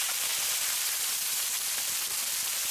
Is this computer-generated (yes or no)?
no